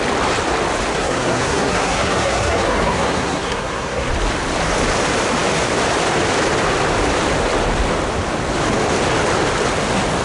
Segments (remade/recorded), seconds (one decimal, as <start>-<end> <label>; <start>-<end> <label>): 0.0-0.9 recorded; 0.9-4.1 remade; 4.1-10.2 recorded